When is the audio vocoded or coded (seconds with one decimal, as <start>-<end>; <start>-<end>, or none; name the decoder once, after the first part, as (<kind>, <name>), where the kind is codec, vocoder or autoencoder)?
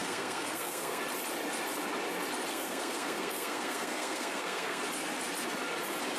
0.0-1.0 (codec, SNAC); 2.5-4.8